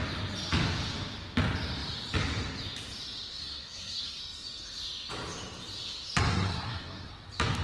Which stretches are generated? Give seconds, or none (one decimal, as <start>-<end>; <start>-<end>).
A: 3.4-4.2; 6.3-7.1